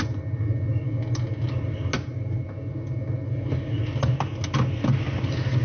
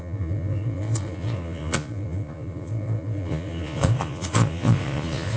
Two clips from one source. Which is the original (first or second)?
first